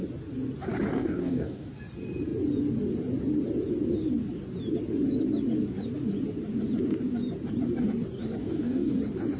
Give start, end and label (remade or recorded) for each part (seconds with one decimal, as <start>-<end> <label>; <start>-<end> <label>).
0.0-0.9 recorded; 0.9-1.7 remade; 1.7-8.4 recorded; 8.4-9.0 remade; 9.0-9.4 recorded